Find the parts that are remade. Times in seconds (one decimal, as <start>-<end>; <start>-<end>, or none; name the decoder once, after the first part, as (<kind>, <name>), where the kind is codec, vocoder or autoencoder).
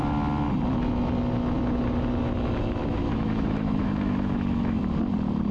2.8-4.8 (autoencoder, DAC-VAE)